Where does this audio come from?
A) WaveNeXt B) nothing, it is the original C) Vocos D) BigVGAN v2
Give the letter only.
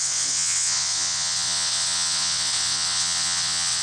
A